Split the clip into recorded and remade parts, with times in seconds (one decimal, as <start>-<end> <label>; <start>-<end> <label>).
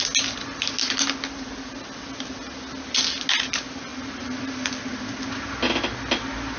0.0-3.9 recorded; 3.9-5.2 remade; 5.2-6.6 recorded